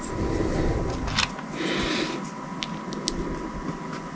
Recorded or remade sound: recorded